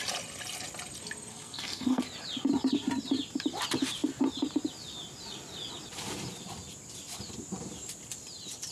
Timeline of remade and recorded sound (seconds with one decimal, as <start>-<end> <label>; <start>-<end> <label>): 0.0-1.3 recorded; 1.3-2.0 remade; 2.0-8.7 recorded